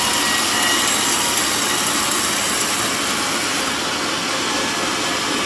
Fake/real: real